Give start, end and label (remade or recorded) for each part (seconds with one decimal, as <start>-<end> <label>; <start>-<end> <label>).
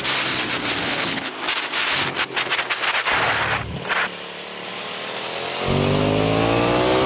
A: 0.0-0.8 recorded; 0.8-1.3 remade; 1.3-7.1 recorded